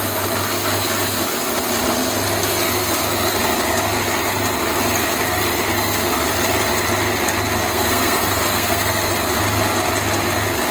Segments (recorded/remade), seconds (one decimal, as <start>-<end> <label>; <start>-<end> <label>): 0.0-7.7 recorded; 7.7-9.1 remade; 9.1-10.7 recorded